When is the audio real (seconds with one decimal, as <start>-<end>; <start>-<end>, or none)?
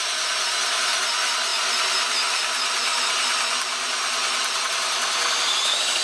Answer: 0.0-6.0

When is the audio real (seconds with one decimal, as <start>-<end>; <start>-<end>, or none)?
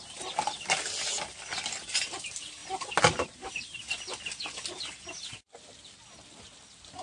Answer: 0.0-7.0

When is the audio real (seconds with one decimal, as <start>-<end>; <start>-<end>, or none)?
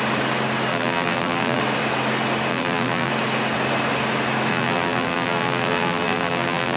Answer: 0.0-0.7; 1.6-2.5; 3.1-4.5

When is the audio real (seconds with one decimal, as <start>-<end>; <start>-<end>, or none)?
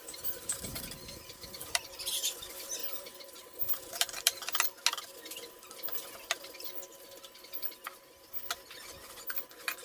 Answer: 1.8-2.8; 4.4-9.8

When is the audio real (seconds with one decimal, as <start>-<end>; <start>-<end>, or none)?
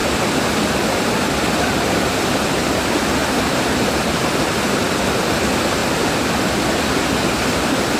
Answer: 0.0-3.2; 3.7-8.0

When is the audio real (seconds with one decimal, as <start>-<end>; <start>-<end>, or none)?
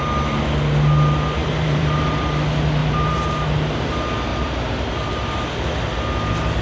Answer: 0.0-1.4; 2.1-2.8; 3.9-4.3; 5.3-6.6